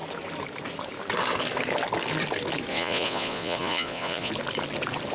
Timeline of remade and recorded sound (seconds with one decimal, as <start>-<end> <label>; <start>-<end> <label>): 0.0-2.7 recorded; 2.7-4.3 remade; 4.3-5.1 recorded